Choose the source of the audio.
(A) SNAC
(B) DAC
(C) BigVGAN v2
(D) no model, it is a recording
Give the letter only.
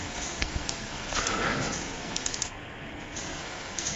A